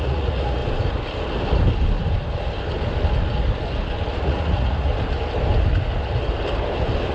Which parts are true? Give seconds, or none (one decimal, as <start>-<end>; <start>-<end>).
0.6-4.2; 4.9-7.1